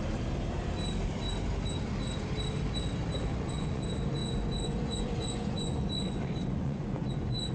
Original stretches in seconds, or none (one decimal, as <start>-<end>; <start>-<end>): 0.0-3.3; 3.8-4.2

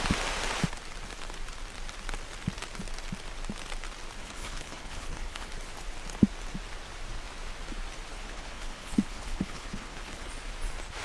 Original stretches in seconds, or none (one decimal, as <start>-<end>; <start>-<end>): 0.0-4.2; 5.5-8.1; 10.3-11.0

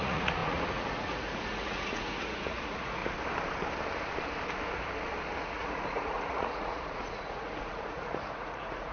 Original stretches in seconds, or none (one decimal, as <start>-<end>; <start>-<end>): 3.0-5.4

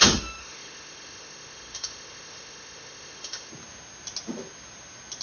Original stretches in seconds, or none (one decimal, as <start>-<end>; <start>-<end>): 0.0-0.4; 3.5-5.2

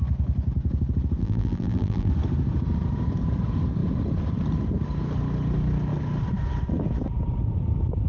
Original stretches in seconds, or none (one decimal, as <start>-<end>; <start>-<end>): 0.0-1.2; 2.1-8.1

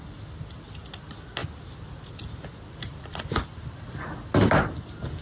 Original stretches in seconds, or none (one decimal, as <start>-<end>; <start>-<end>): 0.0-5.2

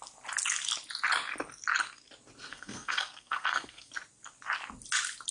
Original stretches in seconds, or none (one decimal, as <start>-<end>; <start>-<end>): 0.0-2.5; 3.9-5.3

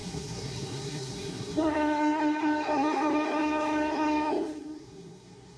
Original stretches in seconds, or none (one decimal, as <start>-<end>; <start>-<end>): none